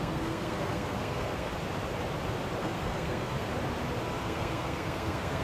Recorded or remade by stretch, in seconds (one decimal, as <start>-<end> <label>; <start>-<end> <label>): 0.0-1.5 remade; 1.5-2.6 recorded; 2.6-3.5 remade; 3.5-4.2 recorded; 4.2-5.4 remade